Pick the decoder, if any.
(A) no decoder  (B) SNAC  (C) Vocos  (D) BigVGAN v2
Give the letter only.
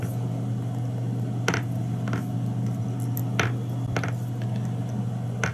A